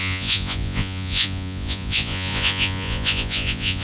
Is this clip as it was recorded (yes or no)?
no